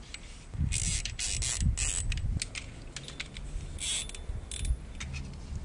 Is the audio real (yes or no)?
yes